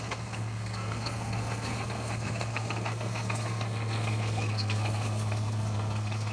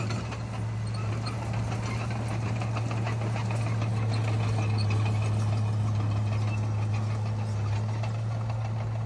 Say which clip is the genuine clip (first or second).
second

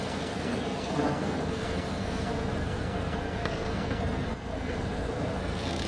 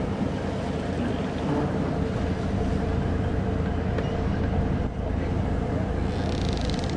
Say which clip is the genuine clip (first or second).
second